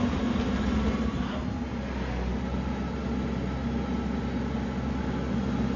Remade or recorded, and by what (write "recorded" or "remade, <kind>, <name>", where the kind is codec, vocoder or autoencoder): recorded